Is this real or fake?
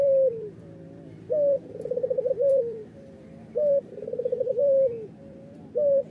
fake